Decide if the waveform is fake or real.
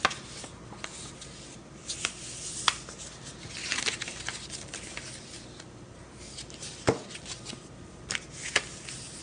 real